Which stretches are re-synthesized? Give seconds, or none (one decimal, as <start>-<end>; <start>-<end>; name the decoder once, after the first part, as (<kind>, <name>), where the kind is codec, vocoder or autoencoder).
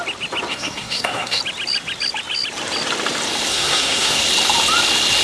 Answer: 0.5-1.4 (codec, SNAC); 3.5-4.2